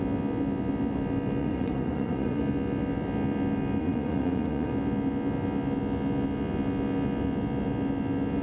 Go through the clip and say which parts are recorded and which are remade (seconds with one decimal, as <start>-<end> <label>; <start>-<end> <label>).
0.0-1.4 recorded; 1.4-2.4 remade; 2.4-3.8 recorded; 3.8-4.7 remade; 4.7-8.4 recorded